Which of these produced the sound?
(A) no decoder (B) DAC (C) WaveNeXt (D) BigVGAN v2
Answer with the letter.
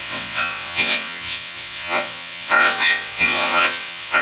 C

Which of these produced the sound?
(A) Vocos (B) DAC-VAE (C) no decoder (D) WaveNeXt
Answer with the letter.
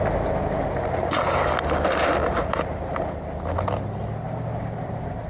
C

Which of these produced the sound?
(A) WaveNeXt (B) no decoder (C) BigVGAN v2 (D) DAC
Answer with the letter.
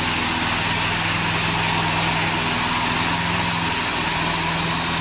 B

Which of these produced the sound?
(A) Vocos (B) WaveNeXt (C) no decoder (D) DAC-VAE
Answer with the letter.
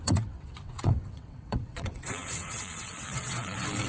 B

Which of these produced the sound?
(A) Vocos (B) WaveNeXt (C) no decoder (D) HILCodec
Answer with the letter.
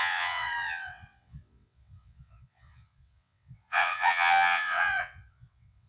B